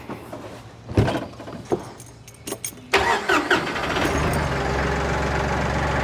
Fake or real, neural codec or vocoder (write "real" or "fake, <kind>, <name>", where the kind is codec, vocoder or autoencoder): real